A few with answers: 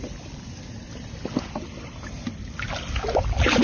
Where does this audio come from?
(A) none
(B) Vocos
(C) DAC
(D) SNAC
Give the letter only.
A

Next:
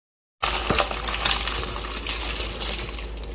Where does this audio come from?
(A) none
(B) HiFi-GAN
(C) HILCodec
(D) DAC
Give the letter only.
A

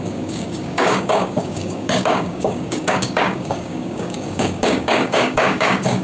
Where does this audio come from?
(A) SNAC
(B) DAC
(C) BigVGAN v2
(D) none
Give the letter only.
B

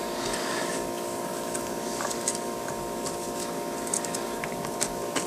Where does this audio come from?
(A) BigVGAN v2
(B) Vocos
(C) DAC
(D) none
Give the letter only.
C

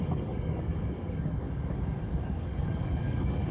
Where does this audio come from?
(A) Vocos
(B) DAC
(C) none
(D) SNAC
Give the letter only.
B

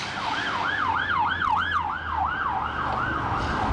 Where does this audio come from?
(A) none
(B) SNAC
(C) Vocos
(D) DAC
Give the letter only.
A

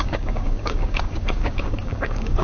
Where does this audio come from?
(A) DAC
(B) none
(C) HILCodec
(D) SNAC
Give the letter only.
A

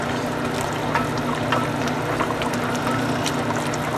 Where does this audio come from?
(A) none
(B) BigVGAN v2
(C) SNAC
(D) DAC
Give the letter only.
A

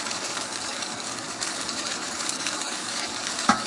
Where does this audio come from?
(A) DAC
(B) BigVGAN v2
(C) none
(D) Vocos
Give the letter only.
A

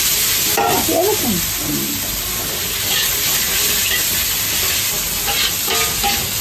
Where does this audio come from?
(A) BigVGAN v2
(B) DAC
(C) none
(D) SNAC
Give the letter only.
C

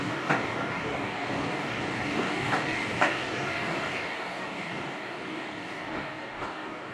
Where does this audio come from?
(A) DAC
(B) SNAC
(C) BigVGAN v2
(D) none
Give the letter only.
A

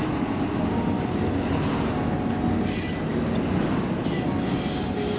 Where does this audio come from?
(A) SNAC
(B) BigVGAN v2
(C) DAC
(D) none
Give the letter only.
D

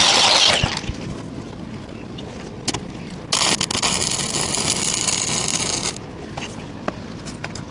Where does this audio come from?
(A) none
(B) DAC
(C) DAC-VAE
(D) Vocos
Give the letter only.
A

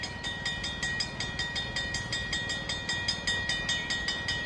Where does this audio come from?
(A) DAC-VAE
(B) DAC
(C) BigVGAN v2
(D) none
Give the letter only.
D